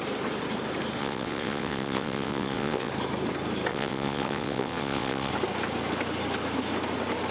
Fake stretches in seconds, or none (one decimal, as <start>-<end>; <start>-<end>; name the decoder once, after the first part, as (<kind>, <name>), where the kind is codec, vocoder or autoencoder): 1.0-2.9 (vocoder, WaveNeXt); 3.7-5.3